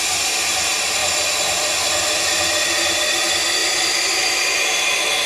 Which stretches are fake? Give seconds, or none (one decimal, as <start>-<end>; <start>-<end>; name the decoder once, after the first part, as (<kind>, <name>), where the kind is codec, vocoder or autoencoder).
0.7-1.3 (vocoder, BigVGAN v2); 3.6-4.2